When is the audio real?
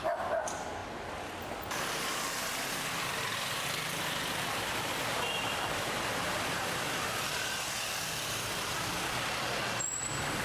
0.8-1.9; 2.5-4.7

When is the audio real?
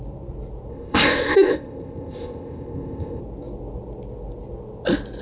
0.0-0.7; 3.2-5.2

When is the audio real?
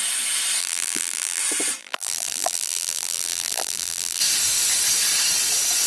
0.0-0.6; 1.4-1.8; 4.2-5.9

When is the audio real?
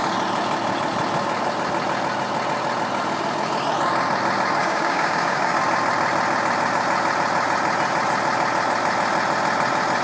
0.0-4.6; 5.6-10.0